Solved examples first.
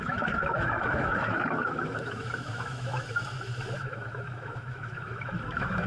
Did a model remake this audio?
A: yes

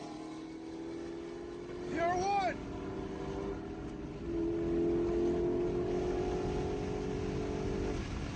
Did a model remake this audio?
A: no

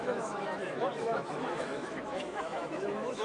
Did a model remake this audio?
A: yes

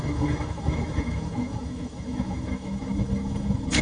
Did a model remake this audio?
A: yes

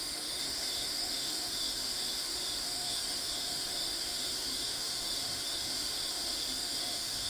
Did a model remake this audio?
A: yes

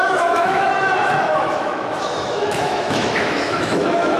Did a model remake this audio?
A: yes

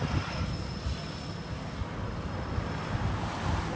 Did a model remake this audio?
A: no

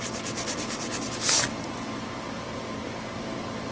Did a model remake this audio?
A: no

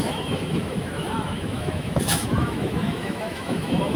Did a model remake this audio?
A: yes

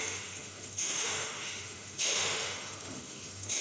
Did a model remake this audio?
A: yes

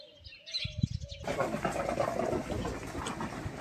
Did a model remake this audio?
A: no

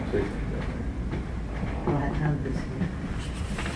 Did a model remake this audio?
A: no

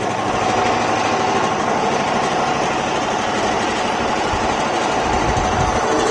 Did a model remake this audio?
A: no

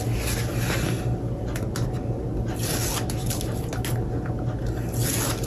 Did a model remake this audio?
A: no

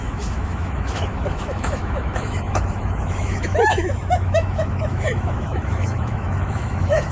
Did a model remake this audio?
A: yes